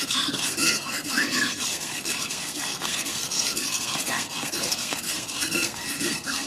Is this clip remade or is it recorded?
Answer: remade